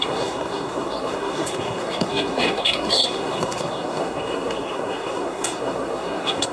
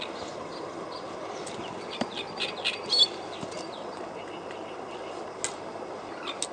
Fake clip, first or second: first